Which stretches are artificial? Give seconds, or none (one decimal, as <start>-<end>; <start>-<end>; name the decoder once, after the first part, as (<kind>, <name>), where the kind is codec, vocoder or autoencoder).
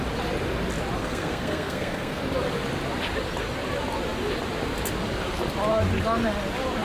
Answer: 1.0-2.2 (codec, SNAC)